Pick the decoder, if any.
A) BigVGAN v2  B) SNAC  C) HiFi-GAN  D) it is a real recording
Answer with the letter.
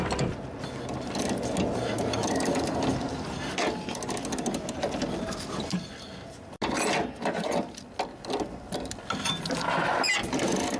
D